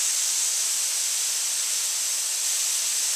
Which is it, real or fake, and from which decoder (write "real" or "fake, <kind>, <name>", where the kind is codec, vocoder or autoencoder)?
real